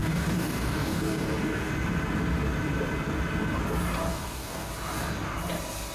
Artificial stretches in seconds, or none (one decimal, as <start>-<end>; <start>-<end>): 0.0-1.7; 4.1-4.7